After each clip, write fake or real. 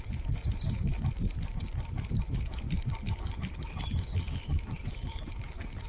fake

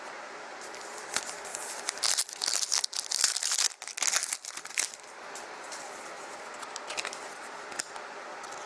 real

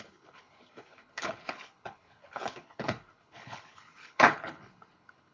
fake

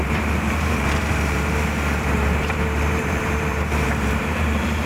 fake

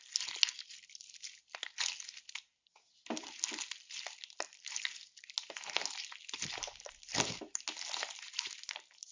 real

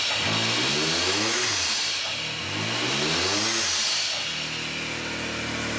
real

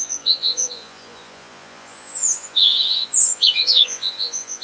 fake